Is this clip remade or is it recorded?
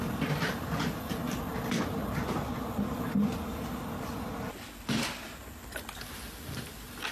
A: recorded